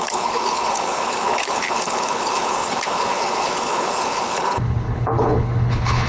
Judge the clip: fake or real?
fake